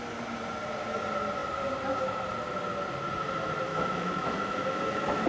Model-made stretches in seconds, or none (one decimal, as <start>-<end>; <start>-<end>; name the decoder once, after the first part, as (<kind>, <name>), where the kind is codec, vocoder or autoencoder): 3.7-5.3 (autoencoder, DAC-VAE)